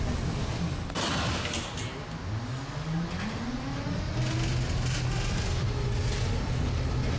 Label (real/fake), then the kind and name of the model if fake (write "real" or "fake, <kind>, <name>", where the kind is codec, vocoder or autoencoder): real